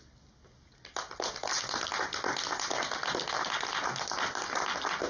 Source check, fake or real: real